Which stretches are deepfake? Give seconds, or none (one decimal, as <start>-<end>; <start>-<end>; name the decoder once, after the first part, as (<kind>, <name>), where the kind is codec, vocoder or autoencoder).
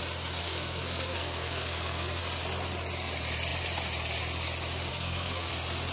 0.4-2.2 (codec, SNAC); 4.9-5.5